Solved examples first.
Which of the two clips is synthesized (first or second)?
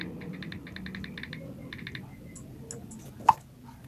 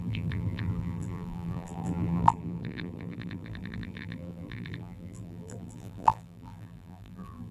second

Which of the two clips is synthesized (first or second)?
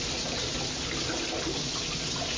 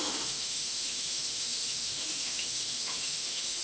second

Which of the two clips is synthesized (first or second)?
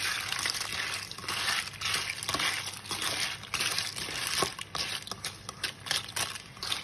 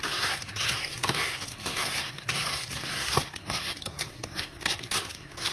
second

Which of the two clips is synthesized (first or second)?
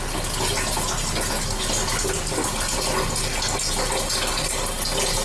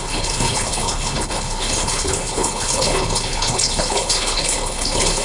second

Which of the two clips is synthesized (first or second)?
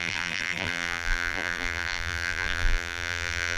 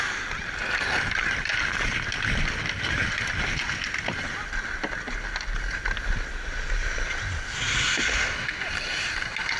first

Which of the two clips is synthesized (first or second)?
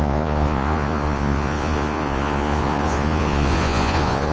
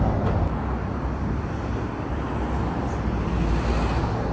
first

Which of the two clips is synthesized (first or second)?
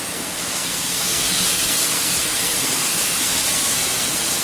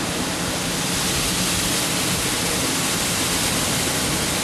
first